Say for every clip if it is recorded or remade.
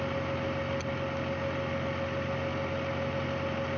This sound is recorded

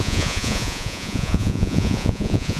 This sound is remade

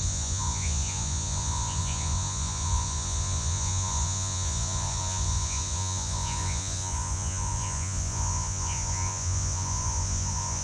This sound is remade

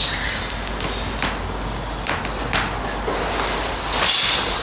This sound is recorded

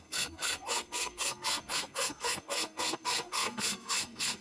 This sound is remade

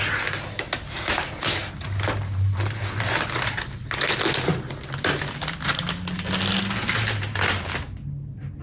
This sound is recorded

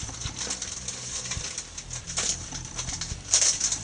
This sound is recorded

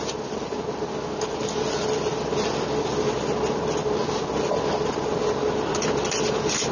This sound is recorded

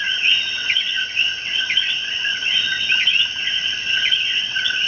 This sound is remade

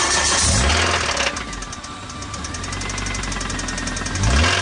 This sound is recorded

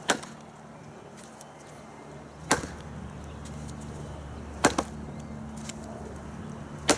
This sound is recorded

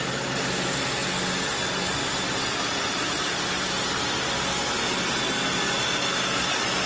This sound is recorded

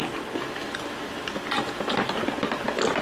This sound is recorded